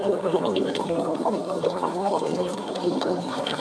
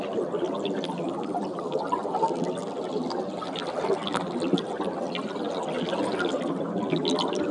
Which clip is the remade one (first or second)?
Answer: first